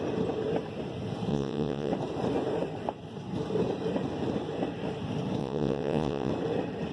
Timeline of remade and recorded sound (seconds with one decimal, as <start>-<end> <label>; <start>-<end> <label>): 0.0-1.3 recorded; 1.3-1.9 remade; 1.9-5.4 recorded; 5.4-6.3 remade; 6.3-6.9 recorded